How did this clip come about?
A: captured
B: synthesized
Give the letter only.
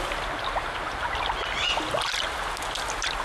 A